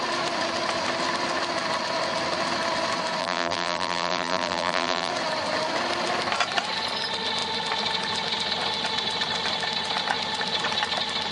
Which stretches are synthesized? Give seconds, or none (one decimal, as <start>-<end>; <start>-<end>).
3.2-5.1